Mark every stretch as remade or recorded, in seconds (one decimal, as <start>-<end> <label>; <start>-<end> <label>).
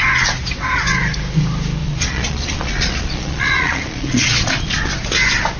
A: 0.0-1.8 recorded; 1.8-4.9 remade; 4.9-5.6 recorded